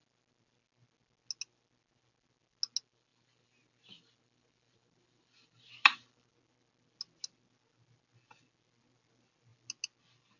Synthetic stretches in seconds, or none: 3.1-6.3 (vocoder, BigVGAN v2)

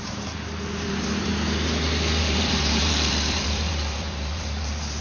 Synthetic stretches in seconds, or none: 0.0-1.3 (vocoder, BigVGAN v2); 2.2-5.0

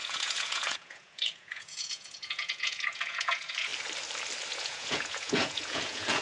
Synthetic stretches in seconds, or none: 0.0-3.7 (vocoder, Vocos); 4.5-6.2

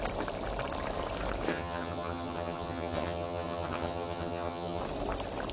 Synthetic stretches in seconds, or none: 1.5-4.8 (vocoder, HiFi-GAN)